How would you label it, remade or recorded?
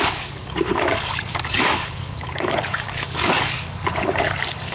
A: remade